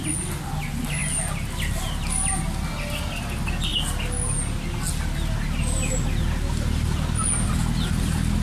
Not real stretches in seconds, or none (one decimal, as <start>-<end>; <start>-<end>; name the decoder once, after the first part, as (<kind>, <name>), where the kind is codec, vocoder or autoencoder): none